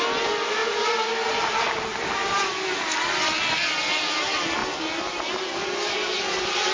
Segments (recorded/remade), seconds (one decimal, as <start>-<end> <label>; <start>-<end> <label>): 0.0-1.9 recorded; 1.9-2.5 remade; 2.5-6.7 recorded